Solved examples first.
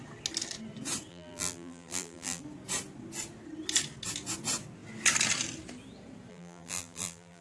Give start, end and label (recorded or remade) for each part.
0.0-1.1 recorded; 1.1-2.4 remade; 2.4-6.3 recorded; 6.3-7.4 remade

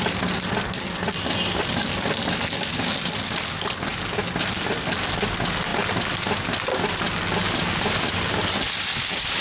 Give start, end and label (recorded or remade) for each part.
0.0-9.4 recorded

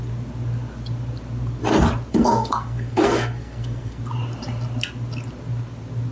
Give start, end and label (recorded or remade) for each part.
0.0-2.1 recorded; 2.1-4.0 remade; 4.0-6.1 recorded